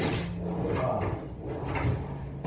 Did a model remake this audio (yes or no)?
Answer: no